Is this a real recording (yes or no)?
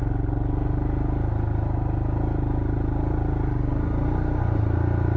yes